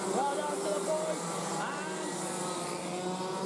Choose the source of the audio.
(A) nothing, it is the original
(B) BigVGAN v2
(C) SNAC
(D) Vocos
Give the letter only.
A